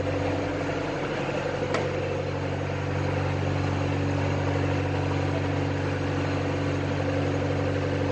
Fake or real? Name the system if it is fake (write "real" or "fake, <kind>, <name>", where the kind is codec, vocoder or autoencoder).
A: real